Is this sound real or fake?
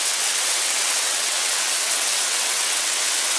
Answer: fake